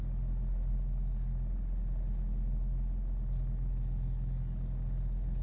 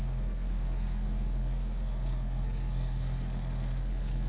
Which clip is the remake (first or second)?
second